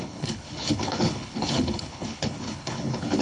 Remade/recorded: remade